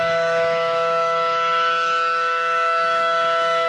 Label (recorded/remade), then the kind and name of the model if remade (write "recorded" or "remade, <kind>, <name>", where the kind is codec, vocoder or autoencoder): remade, autoencoder, DAC-VAE